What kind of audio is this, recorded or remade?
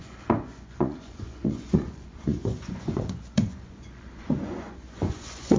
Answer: remade